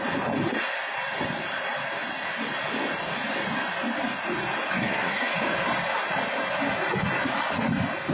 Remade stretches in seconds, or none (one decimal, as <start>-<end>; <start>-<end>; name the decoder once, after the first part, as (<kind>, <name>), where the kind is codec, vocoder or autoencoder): 4.8-5.3 (codec, SNAC)